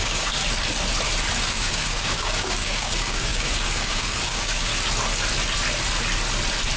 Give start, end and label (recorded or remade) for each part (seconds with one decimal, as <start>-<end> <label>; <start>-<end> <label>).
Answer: 0.0-0.4 remade; 0.4-1.5 recorded; 1.5-4.7 remade; 4.7-6.8 recorded

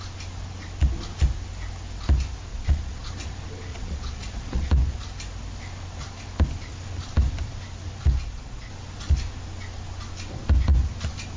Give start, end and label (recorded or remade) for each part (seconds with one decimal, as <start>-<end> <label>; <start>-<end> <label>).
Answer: 0.0-2.5 recorded; 2.5-3.1 remade; 3.1-3.7 recorded; 3.7-4.7 remade; 4.7-8.2 recorded; 8.2-8.7 remade; 8.7-11.4 recorded

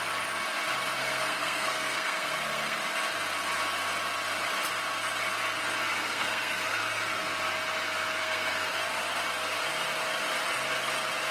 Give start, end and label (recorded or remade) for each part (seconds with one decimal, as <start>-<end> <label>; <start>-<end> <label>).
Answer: 0.0-1.0 recorded; 1.0-2.8 remade; 2.8-5.9 recorded; 5.9-7.3 remade; 7.3-8.2 recorded; 8.2-8.8 remade; 8.8-11.3 recorded

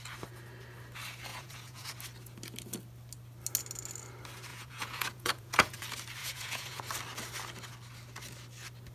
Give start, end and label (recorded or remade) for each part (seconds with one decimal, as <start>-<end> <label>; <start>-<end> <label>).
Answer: 0.0-1.3 recorded; 1.3-1.9 remade; 1.9-4.5 recorded; 4.5-5.8 remade; 5.8-6.2 recorded; 6.2-6.8 remade; 6.8-8.9 recorded

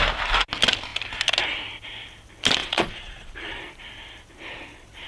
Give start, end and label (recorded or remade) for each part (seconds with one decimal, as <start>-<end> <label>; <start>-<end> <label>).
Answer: 0.0-2.6 recorded; 2.6-3.7 remade; 3.7-5.1 recorded

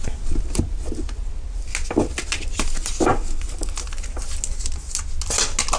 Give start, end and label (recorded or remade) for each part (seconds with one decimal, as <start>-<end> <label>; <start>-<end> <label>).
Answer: 0.0-5.8 recorded